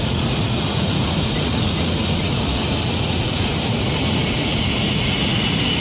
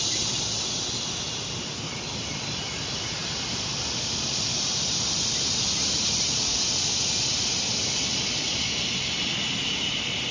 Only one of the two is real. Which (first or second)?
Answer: second